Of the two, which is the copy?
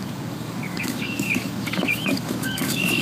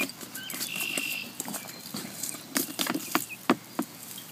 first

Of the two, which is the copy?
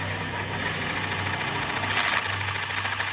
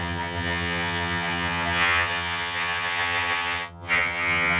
second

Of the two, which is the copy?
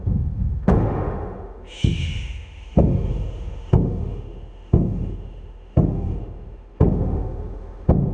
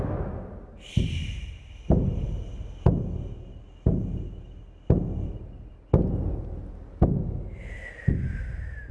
first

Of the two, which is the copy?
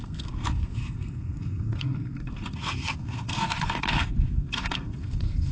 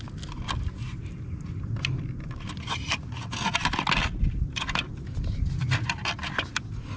first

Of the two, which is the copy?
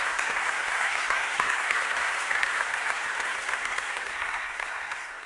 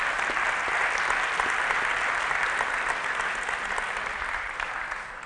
first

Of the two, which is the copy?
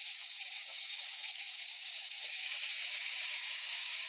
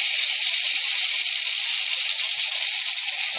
first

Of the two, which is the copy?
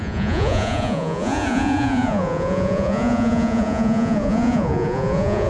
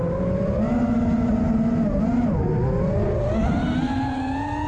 first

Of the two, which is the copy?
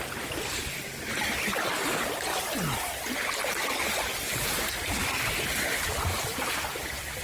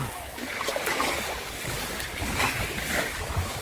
second